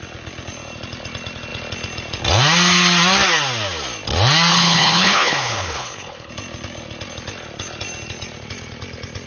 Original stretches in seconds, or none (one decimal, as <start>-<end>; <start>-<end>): 0.0-4.5; 6.3-9.3